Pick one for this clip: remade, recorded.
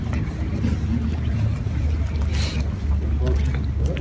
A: recorded